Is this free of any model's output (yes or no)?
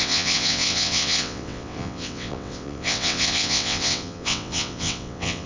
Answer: no